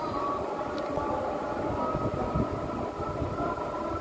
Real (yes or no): yes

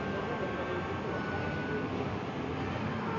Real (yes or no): yes